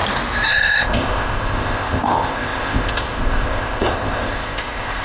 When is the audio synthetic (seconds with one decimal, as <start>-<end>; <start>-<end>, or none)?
0.5-5.0